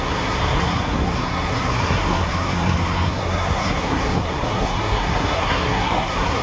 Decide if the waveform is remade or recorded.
remade